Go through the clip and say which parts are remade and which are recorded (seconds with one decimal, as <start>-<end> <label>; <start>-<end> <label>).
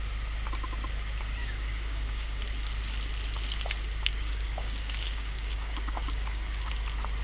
0.0-1.4 recorded; 1.4-2.4 remade; 2.4-4.1 recorded; 4.1-6.7 remade; 6.7-7.2 recorded